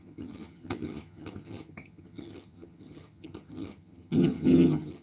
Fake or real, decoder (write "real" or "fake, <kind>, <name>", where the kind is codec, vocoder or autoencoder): fake, vocoder, HiFi-GAN